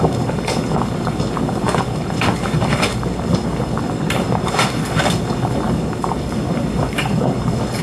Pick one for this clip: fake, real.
fake